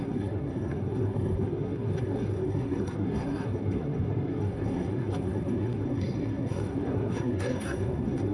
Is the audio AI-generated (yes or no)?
yes